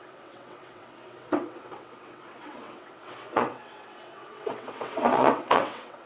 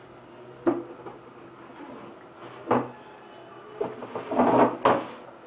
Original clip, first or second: second